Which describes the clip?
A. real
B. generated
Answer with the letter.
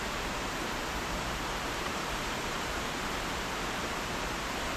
B